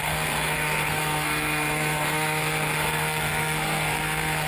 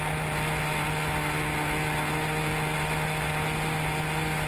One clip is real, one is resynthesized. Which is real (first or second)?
second